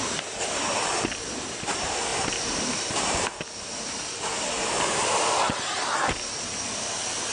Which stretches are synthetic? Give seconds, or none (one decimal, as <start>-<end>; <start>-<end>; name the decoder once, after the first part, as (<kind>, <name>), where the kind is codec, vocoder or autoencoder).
2.1-3.9 (vocoder, BigVGAN v2); 4.9-6.3